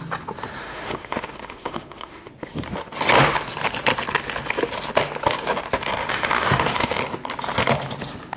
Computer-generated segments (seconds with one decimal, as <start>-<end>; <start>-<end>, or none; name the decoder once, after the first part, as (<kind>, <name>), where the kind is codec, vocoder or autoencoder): 0.6-2.3 (autoencoder, DAC-VAE); 6.0-7.0